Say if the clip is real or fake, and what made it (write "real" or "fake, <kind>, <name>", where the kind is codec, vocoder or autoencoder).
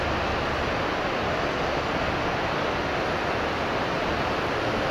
real